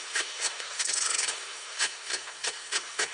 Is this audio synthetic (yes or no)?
yes